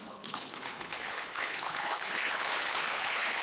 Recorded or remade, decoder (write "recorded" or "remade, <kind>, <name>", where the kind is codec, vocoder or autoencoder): remade, codec, HILCodec